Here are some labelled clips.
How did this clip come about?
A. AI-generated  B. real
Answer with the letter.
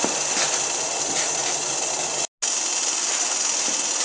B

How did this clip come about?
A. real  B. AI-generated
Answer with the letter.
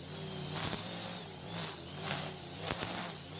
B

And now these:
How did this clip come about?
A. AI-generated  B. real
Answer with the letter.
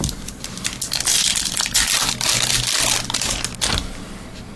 B